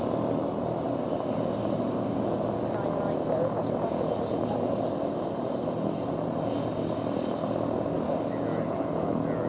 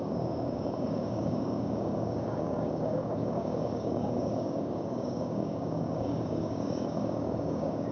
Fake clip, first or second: second